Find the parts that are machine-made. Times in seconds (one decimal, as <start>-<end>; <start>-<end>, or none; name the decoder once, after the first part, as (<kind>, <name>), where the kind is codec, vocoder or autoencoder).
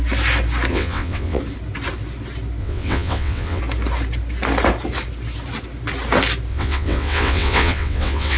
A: 0.7-1.4 (vocoder, WaveNeXt); 2.6-3.6; 6.5-8.4